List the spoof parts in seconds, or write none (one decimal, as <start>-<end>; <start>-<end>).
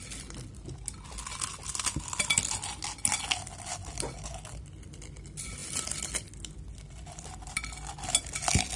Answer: none